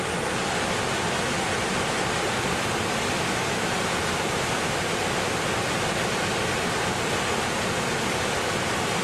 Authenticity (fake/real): real